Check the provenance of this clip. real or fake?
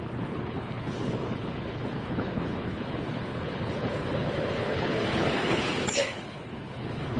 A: fake